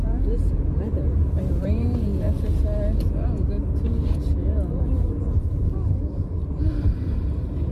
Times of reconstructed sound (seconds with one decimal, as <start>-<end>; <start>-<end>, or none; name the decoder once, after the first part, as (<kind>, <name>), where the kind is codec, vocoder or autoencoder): 0.0-2.1 (vocoder, BigVGAN v2); 6.7-7.7